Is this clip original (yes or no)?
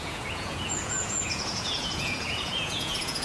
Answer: no